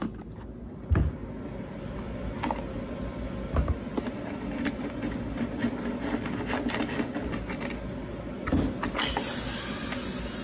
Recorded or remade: recorded